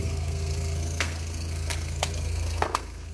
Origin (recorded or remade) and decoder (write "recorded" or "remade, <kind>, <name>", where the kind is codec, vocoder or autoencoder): remade, codec, SNAC